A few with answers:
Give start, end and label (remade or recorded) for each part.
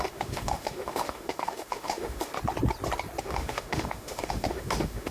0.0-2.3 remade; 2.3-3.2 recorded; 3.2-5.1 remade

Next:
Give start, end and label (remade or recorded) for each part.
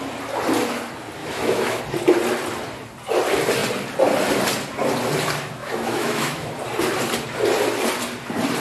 0.0-1.2 recorded; 1.2-1.8 remade; 1.8-5.6 recorded; 5.6-6.5 remade; 6.5-8.6 recorded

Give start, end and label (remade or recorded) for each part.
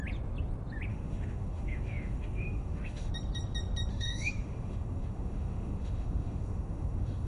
0.0-0.9 recorded; 0.9-3.1 remade; 3.1-3.9 recorded; 3.9-7.3 remade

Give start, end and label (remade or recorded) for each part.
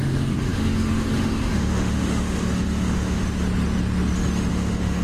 0.0-3.2 remade; 3.2-4.5 recorded; 4.5-5.0 remade